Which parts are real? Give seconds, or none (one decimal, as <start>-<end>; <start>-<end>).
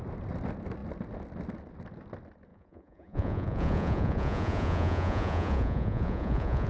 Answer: 0.0-2.5